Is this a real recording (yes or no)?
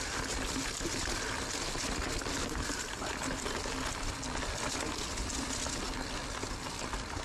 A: yes